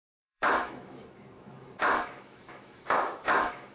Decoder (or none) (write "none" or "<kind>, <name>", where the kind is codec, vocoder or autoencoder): autoencoder, DAC-VAE